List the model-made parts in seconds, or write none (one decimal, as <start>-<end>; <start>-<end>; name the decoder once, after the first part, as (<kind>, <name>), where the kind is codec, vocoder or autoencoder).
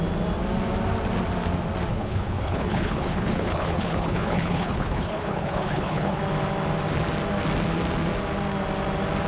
1.9-6.2 (codec, HILCodec)